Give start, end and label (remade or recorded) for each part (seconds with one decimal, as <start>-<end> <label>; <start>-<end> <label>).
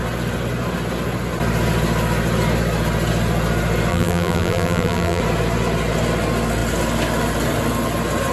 0.0-3.9 recorded; 3.9-5.2 remade; 5.2-8.3 recorded